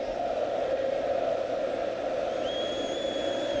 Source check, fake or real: real